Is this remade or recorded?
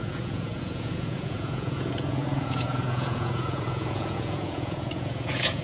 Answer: remade